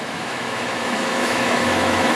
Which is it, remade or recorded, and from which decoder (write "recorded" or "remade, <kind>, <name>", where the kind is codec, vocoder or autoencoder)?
remade, autoencoder, DAC-VAE